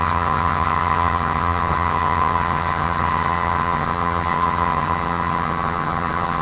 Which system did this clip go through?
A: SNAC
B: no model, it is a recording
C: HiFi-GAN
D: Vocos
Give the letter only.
C